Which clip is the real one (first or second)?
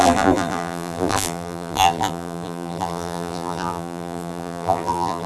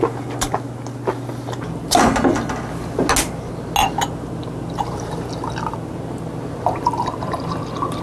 second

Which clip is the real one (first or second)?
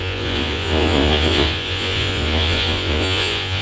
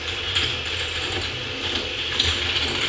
second